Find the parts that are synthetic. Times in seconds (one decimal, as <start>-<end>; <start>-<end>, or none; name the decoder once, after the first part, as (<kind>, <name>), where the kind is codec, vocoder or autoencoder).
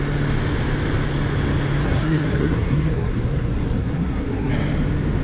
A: 1.8-4.5 (codec, SNAC)